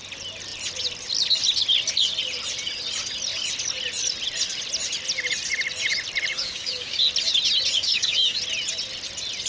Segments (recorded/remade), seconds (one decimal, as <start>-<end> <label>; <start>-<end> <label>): 0.0-6.3 recorded; 6.3-7.0 remade; 7.0-7.8 recorded; 7.8-8.4 remade; 8.4-9.5 recorded